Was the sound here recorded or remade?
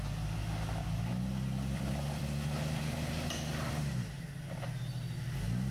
recorded